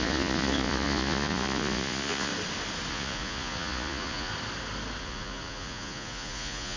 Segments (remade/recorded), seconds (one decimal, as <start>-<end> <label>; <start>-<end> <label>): 0.0-2.3 remade; 2.3-2.9 recorded; 2.9-4.3 remade; 4.3-5.0 recorded; 5.0-6.8 remade